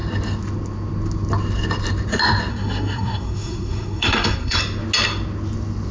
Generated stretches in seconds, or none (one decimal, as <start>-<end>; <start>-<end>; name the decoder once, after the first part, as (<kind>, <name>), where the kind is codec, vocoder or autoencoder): 2.5-4.6 (codec, SNAC)